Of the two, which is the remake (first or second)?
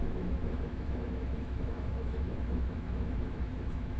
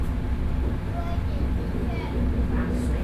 first